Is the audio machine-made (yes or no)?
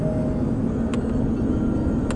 no